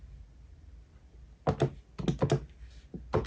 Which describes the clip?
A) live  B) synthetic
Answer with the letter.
A